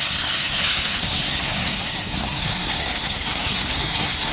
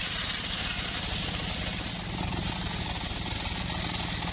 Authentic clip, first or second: second